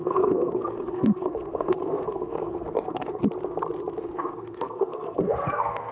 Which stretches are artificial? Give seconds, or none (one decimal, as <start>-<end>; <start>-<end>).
0.0-3.2; 4.0-5.9